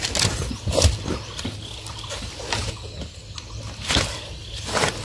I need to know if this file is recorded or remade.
recorded